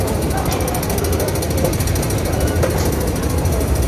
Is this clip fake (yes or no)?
no